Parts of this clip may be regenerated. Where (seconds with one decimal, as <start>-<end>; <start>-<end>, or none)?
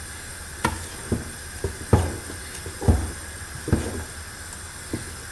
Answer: none